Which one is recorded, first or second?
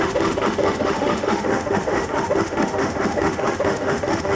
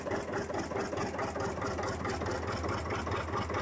second